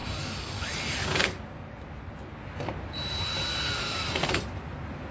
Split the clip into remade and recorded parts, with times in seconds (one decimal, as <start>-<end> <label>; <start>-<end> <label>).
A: 0.0-5.1 recorded